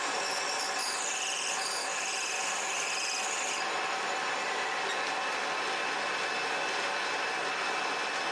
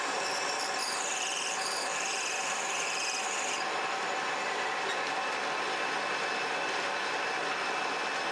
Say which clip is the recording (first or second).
first